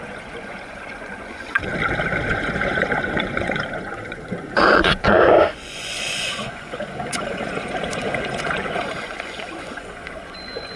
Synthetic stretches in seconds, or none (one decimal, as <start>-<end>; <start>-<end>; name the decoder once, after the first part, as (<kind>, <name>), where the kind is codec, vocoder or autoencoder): 0.0-1.7 (vocoder, Vocos); 2.3-10.8